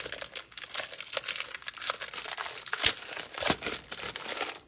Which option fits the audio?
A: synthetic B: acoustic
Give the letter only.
B